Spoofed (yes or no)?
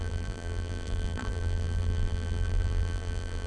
yes